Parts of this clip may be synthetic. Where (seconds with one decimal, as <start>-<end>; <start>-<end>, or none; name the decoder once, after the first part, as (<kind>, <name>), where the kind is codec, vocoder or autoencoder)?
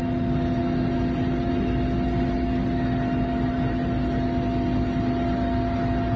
none